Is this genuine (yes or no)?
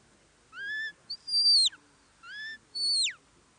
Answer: yes